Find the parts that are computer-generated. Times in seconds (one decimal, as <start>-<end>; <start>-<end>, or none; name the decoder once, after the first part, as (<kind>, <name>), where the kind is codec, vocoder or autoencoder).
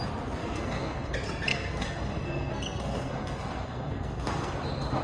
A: 0.4-1.1 (codec, SNAC); 1.5-4.5